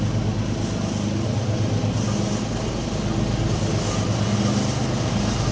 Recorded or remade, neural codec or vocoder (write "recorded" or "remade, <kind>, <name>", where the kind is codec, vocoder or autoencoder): recorded